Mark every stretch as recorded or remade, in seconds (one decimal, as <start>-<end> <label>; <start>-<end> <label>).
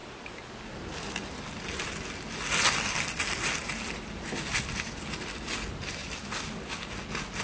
0.0-7.4 recorded